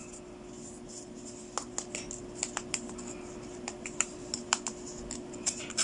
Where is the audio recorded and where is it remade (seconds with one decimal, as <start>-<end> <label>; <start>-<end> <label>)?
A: 0.0-5.8 recorded